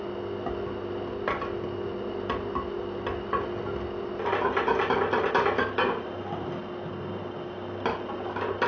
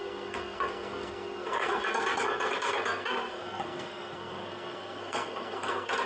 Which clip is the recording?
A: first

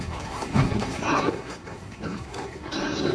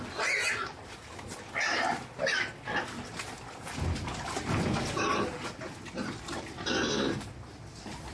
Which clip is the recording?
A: second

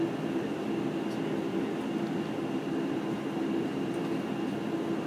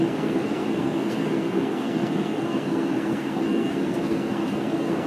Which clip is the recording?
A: first